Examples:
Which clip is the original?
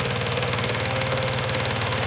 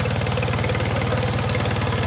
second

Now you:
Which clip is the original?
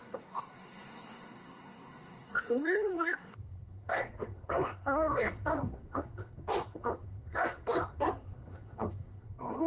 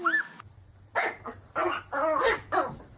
second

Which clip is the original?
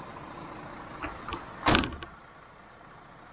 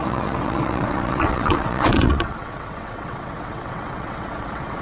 first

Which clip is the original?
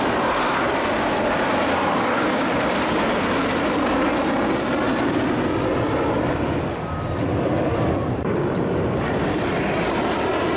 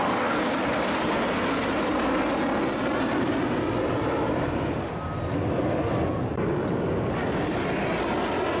second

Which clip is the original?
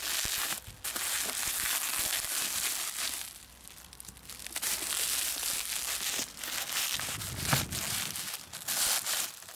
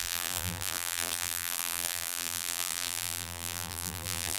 first